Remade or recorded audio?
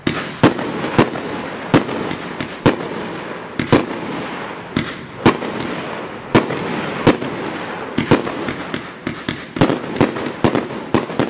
recorded